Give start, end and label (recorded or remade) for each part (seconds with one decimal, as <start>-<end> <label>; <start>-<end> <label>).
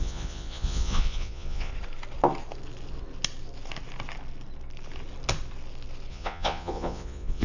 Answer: 0.0-1.7 remade; 1.7-6.1 recorded; 6.1-7.4 remade